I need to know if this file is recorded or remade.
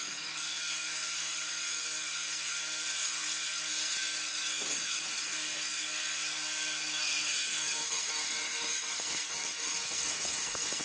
remade